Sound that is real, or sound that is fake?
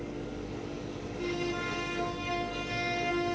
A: fake